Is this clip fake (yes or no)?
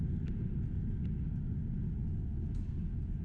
no